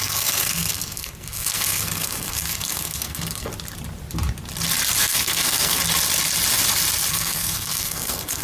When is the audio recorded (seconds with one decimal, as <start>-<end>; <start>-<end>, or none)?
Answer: 3.5-5.0; 5.8-7.1